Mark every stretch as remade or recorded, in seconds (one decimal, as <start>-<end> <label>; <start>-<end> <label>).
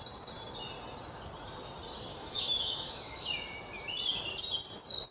0.0-2.1 recorded; 2.1-3.3 remade; 3.3-5.1 recorded